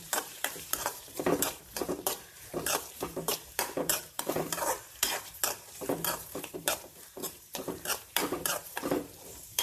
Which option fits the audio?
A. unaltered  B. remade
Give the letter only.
B